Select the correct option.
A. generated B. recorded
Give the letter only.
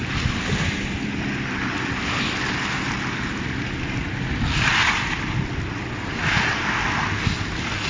B